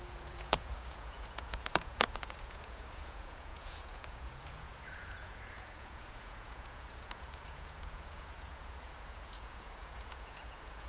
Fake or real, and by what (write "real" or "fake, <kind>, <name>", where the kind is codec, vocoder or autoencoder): fake, vocoder, Vocos